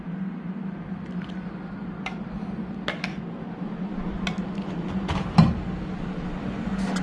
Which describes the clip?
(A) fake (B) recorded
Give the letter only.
B